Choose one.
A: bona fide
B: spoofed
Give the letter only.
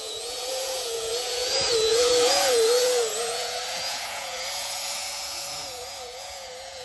B